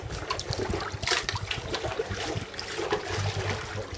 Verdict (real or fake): real